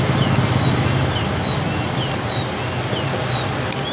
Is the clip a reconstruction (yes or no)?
no